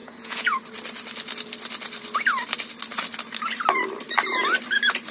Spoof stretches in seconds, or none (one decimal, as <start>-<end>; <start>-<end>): 0.0-0.6